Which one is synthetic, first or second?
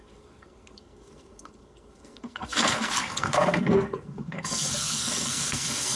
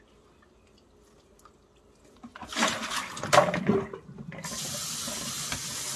first